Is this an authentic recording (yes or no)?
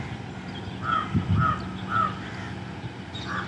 yes